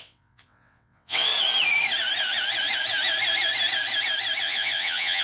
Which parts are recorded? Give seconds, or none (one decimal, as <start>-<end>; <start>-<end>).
1.3-4.4